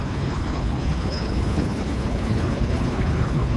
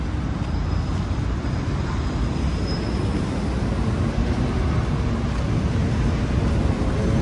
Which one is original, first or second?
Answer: second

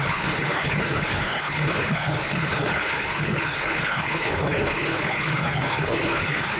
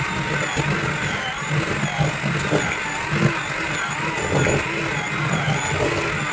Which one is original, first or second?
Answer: second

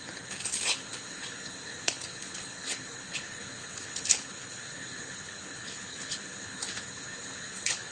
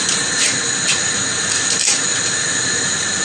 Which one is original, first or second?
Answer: second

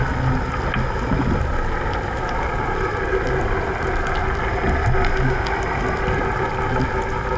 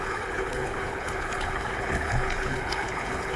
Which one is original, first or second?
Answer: first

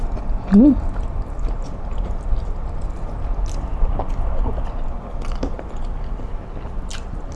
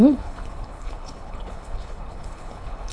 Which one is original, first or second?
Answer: first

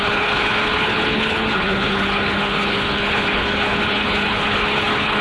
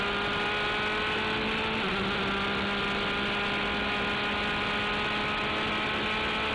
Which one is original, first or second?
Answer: second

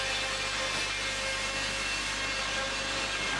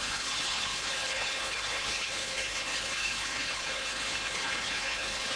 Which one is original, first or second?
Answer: first